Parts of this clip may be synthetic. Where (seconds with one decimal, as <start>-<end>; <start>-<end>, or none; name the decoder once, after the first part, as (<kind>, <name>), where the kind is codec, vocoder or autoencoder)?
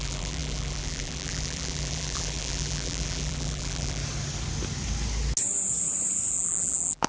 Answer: 0.0-4.0 (vocoder, BigVGAN v2); 6.3-7.1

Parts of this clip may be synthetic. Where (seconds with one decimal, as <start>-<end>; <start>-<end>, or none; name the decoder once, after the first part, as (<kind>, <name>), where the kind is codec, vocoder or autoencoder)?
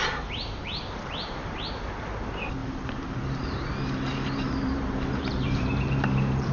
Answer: 0.0-1.6 (vocoder, BigVGAN v2); 2.6-6.5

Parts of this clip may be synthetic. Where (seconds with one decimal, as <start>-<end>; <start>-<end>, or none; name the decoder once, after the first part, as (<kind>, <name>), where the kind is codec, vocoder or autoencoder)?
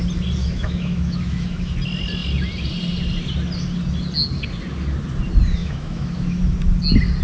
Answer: 0.4-1.7 (autoencoder, DAC-VAE); 5.6-6.4